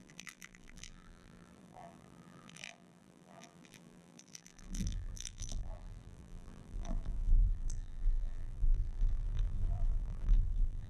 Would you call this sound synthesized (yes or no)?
yes